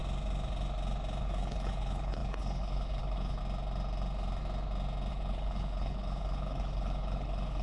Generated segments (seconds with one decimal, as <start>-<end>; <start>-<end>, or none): 1.2-3.4; 5.1-7.6